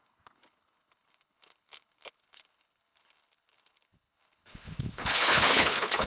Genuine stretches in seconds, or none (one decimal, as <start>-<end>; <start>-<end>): none